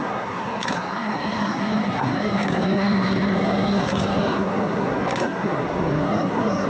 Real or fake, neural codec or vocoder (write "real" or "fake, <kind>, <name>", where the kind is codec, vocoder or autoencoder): fake, codec, SNAC